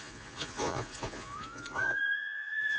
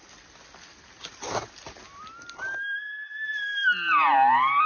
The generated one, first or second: first